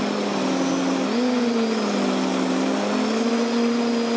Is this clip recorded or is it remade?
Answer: recorded